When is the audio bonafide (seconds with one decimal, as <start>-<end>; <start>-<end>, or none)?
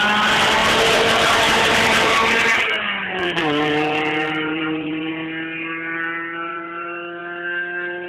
0.0-0.6; 5.1-6.5; 7.2-8.1